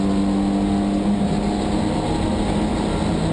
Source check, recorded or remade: recorded